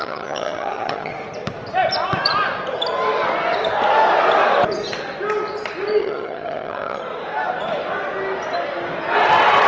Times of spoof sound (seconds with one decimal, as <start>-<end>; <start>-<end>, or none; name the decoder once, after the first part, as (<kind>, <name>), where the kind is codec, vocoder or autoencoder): 0.0-1.1 (vocoder, HiFi-GAN); 6.0-7.0